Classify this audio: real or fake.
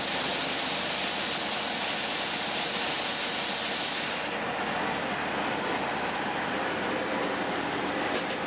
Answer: real